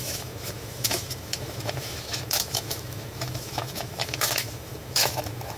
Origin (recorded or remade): remade